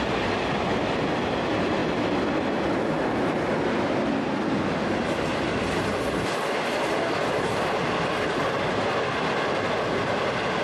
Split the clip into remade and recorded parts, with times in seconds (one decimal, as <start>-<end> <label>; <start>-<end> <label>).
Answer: 0.0-10.6 recorded